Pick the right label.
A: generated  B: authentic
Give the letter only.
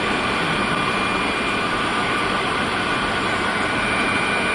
B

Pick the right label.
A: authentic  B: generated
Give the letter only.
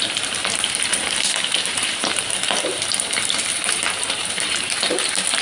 B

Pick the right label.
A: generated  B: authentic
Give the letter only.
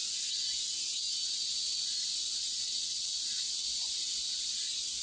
B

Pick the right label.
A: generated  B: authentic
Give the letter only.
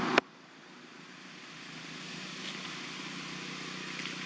B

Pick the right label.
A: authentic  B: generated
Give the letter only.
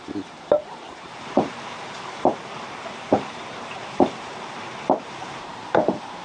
B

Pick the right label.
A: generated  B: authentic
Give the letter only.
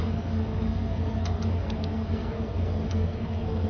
A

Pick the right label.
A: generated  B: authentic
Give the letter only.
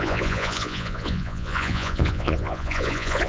A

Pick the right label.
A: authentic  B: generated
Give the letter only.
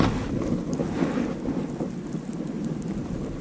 A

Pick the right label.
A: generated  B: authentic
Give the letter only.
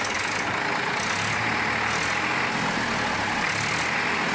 B